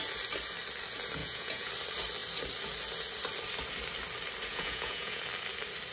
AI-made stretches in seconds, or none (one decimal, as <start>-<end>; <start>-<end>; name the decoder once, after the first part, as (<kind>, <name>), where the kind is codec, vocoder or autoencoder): 1.2-1.7 (vocoder, Vocos); 4.5-5.2